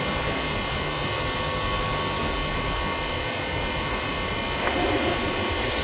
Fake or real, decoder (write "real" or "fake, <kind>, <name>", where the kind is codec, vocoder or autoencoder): real